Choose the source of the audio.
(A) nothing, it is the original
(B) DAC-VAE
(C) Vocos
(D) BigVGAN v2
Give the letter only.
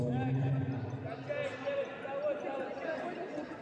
A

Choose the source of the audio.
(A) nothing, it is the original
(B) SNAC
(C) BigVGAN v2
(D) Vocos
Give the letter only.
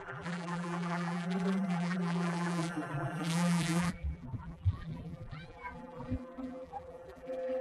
C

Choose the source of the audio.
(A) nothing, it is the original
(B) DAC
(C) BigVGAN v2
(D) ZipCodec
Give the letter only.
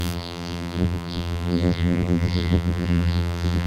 C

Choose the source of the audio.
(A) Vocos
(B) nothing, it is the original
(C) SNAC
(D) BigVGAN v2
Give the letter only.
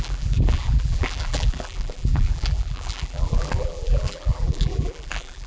D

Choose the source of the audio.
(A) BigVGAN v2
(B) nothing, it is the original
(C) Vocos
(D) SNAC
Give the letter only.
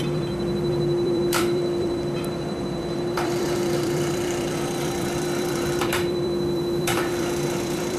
A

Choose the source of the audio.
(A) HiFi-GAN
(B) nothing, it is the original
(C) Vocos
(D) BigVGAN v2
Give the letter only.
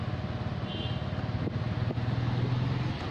B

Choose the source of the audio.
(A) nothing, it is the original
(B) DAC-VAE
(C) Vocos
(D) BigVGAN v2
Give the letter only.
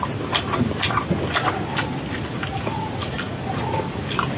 A